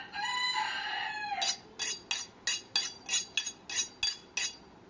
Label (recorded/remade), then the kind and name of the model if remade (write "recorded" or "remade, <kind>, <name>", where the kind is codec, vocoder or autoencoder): recorded